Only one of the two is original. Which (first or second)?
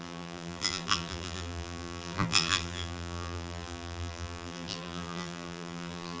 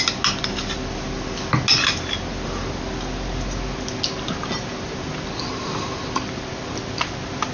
second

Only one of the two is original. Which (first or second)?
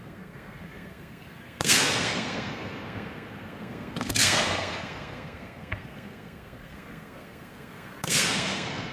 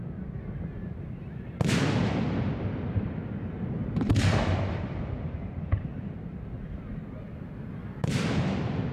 second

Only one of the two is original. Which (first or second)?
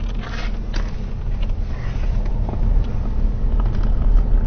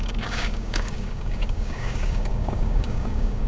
first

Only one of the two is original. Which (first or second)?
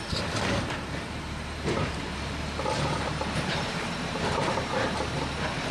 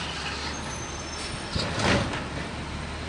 second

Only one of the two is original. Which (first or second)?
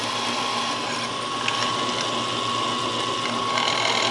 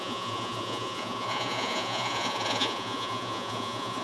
first